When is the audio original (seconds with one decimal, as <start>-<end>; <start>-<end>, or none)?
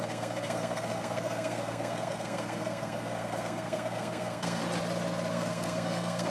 4.6-5.3